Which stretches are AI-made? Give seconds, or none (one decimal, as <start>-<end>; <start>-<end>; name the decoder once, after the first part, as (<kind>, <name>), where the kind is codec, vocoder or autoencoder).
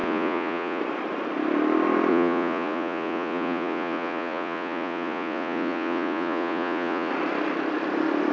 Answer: 0.0-0.8 (vocoder, Vocos); 2.1-7.1